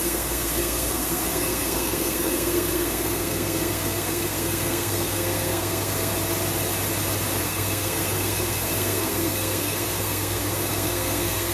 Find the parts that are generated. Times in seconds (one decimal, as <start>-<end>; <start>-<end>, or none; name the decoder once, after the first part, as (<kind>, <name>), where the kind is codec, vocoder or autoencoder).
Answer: 0.0-6.1 (codec, SNAC); 7.4-11.5